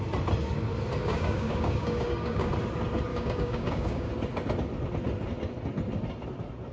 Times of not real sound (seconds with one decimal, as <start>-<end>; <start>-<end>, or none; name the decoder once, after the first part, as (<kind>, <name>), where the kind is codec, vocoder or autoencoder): 1.0-2.5 (codec, DAC); 3.1-4.1